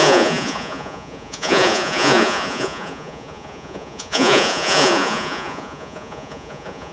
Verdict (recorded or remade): remade